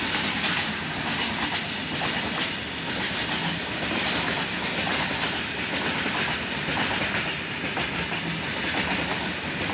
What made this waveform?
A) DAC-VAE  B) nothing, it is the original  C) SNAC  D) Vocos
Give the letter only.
B